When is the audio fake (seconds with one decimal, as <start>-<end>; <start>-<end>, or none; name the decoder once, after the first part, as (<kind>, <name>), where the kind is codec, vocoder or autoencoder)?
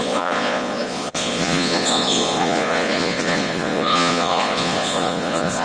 0.0-5.6 (vocoder, Vocos)